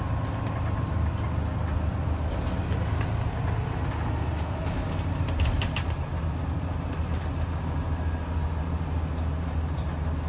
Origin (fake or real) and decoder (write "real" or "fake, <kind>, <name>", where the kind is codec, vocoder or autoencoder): real